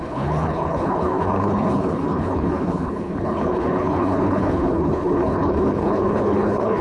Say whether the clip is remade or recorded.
remade